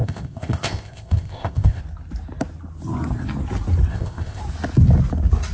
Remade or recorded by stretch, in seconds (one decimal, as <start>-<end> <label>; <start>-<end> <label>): 0.0-1.8 remade; 1.8-3.9 recorded; 3.9-4.4 remade; 4.4-5.5 recorded